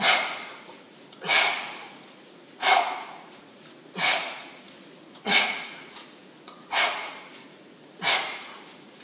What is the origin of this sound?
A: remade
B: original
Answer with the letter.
A